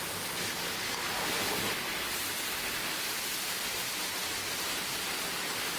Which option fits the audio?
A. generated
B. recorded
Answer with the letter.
B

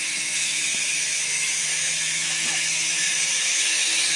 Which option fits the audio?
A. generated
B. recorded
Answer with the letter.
A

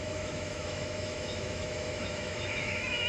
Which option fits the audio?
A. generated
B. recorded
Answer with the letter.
A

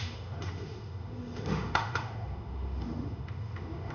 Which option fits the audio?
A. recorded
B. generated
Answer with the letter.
B